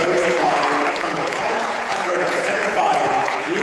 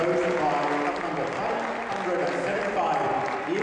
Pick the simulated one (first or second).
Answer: first